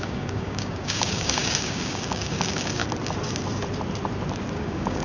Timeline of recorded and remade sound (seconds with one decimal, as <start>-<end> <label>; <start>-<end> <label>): 0.0-2.8 remade; 2.8-4.5 recorded; 4.5-5.0 remade